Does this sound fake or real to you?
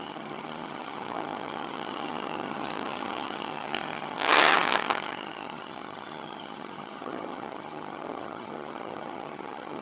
fake